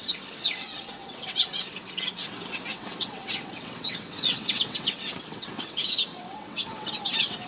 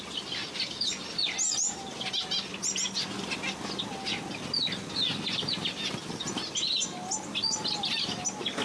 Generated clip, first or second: first